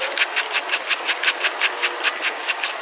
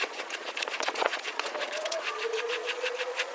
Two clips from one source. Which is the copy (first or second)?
second